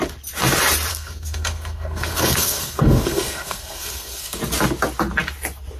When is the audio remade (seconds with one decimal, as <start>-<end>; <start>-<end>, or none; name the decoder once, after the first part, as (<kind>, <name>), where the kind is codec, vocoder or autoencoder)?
0.9-4.4 (codec, SNAC)